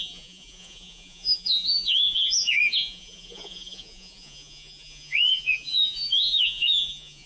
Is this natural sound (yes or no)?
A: no